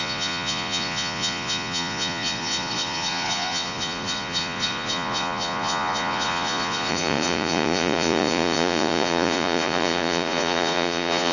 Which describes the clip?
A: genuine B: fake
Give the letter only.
B